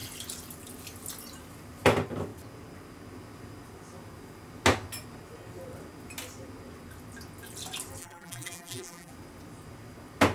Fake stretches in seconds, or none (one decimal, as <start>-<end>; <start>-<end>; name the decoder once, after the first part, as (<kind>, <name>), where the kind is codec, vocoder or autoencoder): 8.0-9.1 (vocoder, BigVGAN v2)